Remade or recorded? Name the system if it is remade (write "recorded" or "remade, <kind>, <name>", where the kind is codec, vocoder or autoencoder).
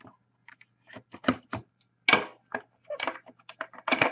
recorded